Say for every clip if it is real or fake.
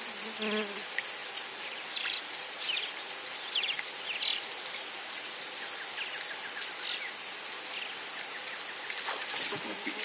real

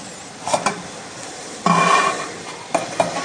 real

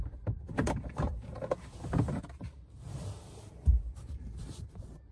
fake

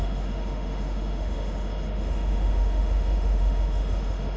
fake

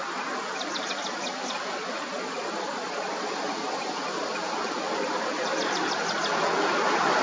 real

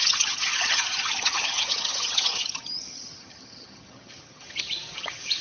fake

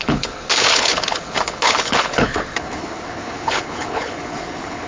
fake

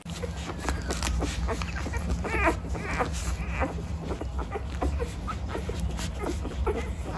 real